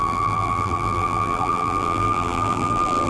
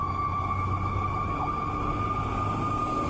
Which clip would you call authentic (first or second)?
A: second